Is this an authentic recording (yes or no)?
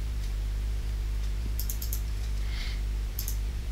no